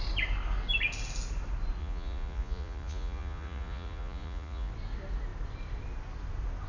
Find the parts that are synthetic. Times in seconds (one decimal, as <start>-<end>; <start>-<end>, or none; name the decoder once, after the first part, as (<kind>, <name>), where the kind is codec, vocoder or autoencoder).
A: 1.8-4.7 (vocoder, Vocos)